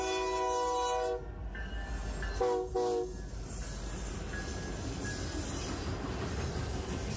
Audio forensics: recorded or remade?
recorded